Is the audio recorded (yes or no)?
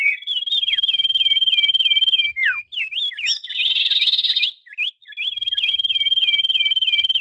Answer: yes